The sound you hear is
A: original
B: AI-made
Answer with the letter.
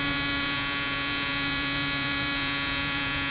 B